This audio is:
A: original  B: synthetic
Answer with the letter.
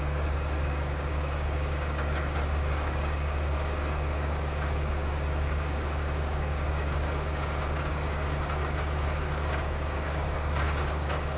B